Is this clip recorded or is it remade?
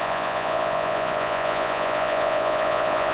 remade